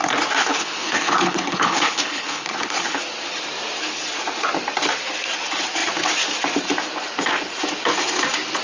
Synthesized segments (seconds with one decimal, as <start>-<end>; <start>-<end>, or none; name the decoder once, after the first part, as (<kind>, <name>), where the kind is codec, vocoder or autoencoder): 0.4-3.0 (codec, HILCodec)